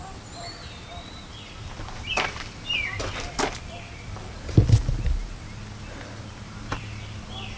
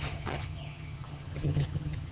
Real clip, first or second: first